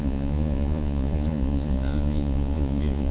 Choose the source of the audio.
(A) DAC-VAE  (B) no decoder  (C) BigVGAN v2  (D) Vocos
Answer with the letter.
D